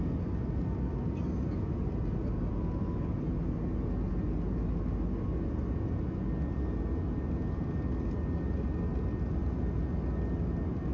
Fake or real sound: real